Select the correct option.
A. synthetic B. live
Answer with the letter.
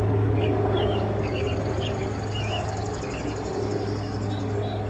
A